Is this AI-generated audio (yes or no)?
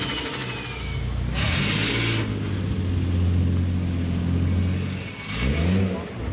no